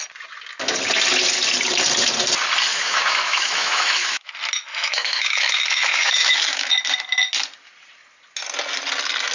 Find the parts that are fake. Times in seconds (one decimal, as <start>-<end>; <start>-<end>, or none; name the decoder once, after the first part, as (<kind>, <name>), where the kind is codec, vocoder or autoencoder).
2.7-4.3 (autoencoder, DAC-VAE); 4.7-6.7